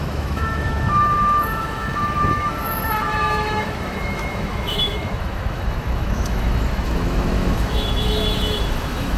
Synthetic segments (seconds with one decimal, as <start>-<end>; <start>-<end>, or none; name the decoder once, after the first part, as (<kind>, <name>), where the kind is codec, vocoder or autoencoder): 0.0-9.2 (autoencoder, DAC-VAE)